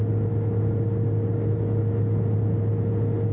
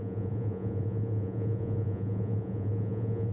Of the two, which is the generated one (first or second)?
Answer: second